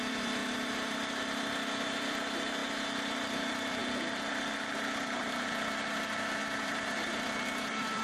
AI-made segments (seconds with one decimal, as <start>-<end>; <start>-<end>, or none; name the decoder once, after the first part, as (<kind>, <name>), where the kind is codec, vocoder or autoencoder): 0.0-0.4 (vocoder, BigVGAN v2); 1.3-2.6; 3.1-3.8; 6.6-8.0